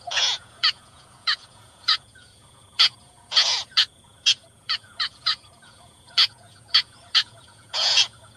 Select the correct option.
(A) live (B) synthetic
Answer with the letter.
B